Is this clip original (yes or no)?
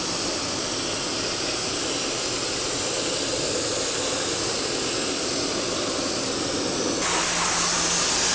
yes